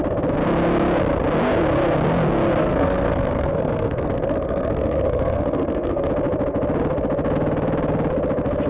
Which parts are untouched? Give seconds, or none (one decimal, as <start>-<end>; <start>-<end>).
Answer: 0.0-2.6; 6.1-8.7